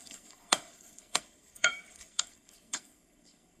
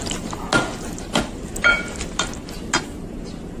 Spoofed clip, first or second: first